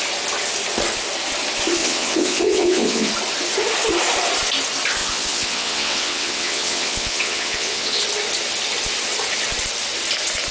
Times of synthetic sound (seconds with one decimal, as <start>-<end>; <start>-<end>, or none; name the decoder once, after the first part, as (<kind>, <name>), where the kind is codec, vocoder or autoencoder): 1.8-3.1 (vocoder, WaveNeXt); 5.0-8.0